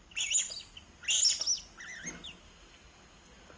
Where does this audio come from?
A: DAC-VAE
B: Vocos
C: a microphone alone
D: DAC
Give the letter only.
C